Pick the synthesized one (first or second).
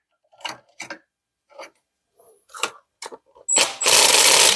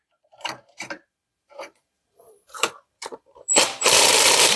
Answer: second